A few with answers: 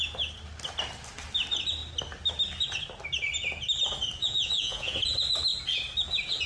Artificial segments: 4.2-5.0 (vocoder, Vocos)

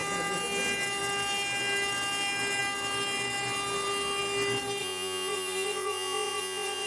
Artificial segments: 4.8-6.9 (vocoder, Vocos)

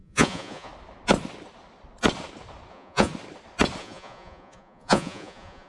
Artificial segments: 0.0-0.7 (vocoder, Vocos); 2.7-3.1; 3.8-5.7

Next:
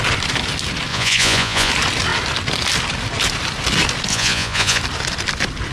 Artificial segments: 0.9-1.7 (vocoder, Vocos); 4.1-4.8

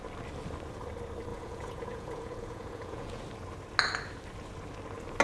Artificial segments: 1.3-3.2 (vocoder, Vocos)

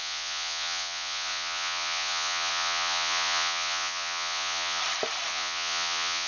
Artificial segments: 0.0-4.8 (vocoder, Vocos); 5.3-6.3

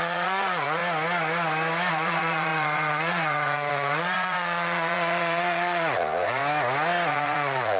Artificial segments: 0.0-0.8 (vocoder, Vocos); 1.9-6.4; 7.1-7.8